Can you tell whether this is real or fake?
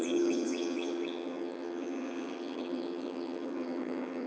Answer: fake